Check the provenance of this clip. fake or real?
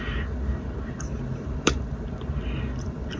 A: real